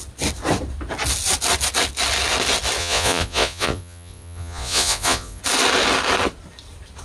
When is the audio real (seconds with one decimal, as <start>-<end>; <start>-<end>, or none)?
0.0-2.8; 5.4-7.0